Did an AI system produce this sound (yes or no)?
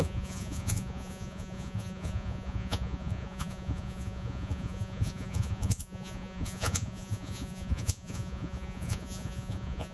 yes